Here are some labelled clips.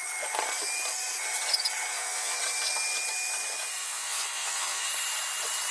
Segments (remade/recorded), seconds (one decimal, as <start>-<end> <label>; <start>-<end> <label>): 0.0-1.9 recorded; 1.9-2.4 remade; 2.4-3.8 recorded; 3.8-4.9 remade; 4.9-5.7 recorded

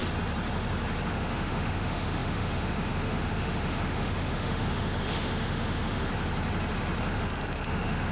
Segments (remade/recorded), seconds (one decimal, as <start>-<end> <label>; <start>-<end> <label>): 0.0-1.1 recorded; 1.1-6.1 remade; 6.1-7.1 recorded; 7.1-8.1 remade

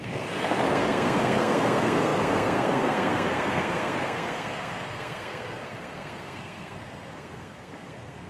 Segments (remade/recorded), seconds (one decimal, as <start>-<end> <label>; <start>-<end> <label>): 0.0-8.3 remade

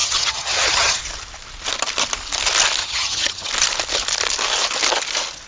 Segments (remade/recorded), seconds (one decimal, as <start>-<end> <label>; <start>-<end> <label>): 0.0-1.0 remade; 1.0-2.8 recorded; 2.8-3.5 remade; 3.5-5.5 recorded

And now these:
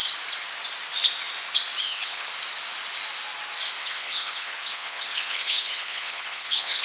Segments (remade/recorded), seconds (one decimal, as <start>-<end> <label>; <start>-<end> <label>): 0.0-1.8 recorded; 1.8-2.3 remade; 2.3-3.8 recorded; 3.8-6.8 remade

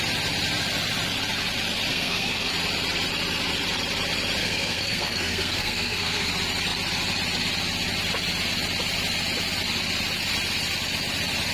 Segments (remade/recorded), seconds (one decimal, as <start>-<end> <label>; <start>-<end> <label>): 0.0-1.9 recorded; 1.9-2.5 remade; 2.5-4.4 recorded; 4.4-6.3 remade; 6.3-11.5 recorded